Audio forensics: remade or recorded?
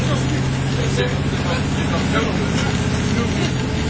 recorded